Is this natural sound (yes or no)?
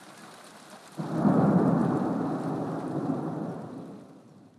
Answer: yes